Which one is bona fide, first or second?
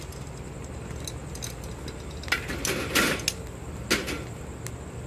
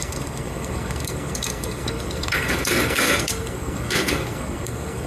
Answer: first